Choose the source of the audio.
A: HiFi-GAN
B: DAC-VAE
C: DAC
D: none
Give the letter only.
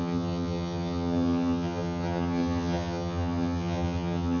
A